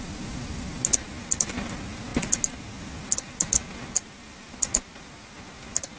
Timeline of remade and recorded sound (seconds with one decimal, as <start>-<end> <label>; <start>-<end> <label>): 0.0-6.0 recorded